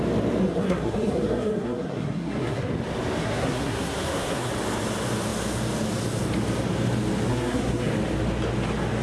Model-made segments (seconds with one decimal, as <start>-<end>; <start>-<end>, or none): 0.4-2.7; 3.2-4.5; 7.3-7.9